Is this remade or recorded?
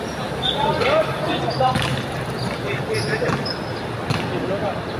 recorded